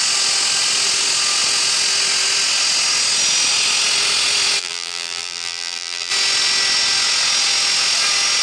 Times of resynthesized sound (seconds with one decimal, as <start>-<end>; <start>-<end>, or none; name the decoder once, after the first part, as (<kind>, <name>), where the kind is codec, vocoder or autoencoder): 4.6-6.1 (vocoder, BigVGAN v2)